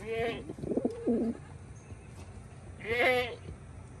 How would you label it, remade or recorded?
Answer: recorded